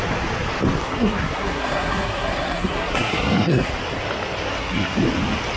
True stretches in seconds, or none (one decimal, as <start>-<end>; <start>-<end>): 0.0-0.8; 3.7-4.5; 5.0-5.6